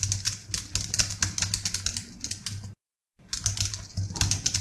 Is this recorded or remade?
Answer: recorded